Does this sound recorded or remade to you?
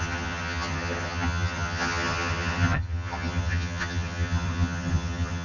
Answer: remade